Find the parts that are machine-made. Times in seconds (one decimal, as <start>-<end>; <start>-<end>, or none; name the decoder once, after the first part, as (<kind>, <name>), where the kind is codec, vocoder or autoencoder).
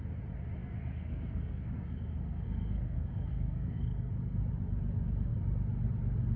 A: 0.6-4.4 (codec, SNAC)